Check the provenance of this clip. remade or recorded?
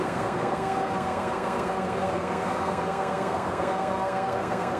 remade